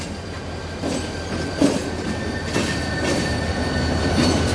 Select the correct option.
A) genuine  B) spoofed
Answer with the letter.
A